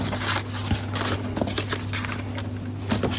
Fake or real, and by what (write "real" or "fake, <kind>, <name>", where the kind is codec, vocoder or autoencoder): real